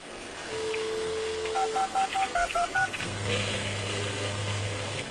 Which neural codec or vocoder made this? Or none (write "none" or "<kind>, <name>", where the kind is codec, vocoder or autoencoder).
codec, SNAC